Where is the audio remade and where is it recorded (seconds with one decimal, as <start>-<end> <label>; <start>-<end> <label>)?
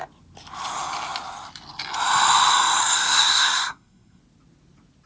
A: 0.0-2.8 recorded; 2.8-4.2 remade; 4.2-5.1 recorded